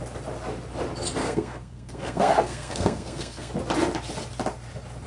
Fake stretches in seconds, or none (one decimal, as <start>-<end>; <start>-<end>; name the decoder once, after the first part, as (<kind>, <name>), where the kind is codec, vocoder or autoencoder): 1.2-3.5 (codec, SNAC)